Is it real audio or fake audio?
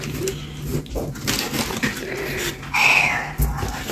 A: real